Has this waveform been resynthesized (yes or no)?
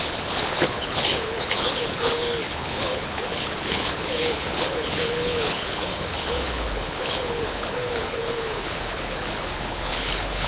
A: yes